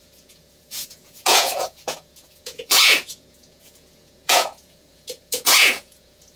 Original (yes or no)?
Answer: no